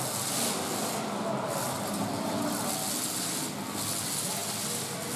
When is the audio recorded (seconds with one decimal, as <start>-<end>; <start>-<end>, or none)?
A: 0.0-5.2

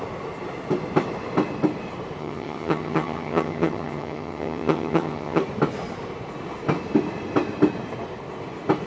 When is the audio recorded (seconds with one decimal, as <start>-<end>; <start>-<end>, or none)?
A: 0.0-2.2; 5.4-8.9

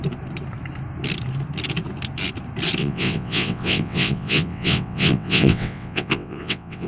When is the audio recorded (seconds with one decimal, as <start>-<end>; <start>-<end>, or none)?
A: 0.0-2.8

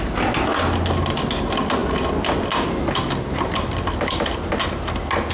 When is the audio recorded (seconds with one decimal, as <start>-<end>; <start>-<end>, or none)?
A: 0.0-5.3